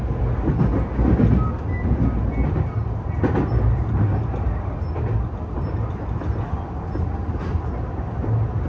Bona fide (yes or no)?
yes